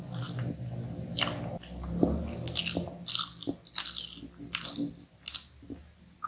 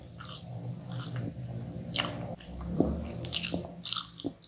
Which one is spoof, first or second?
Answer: second